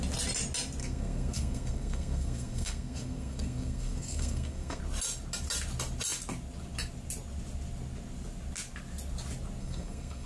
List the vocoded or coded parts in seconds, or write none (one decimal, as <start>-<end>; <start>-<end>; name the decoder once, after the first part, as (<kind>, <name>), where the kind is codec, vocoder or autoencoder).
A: 0.8-4.8 (codec, SNAC); 9.6-10.3